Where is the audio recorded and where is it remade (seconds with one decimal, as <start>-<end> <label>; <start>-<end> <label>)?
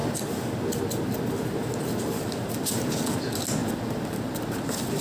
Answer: 0.0-5.0 recorded